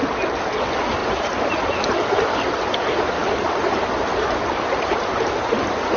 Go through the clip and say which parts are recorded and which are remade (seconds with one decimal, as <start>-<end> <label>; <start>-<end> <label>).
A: 0.0-6.0 recorded